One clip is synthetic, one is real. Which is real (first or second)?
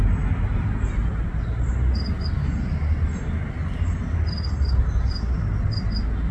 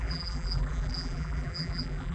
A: first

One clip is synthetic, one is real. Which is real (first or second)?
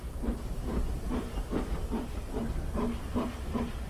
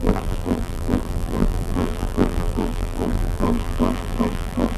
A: first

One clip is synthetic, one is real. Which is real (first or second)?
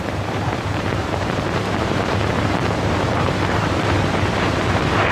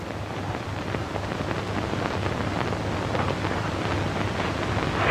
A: second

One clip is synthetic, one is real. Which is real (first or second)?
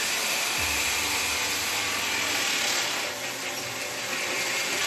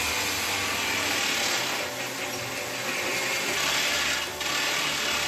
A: second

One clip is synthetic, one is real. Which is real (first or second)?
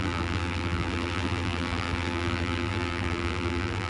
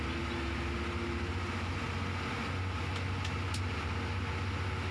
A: second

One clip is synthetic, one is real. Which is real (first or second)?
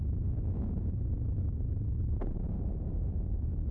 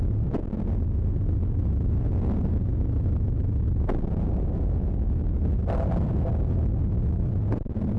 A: second